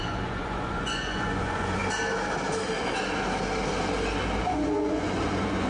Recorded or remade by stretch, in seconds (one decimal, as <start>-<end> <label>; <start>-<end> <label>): 0.0-1.8 remade; 1.8-4.4 recorded; 4.4-5.7 remade